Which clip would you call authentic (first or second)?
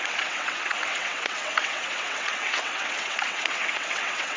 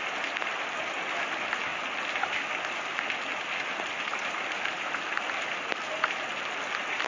second